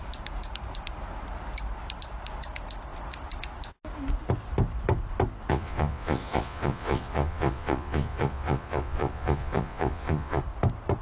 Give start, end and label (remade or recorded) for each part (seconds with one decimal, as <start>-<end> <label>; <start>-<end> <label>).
0.0-5.5 recorded; 5.5-10.4 remade; 10.4-11.0 recorded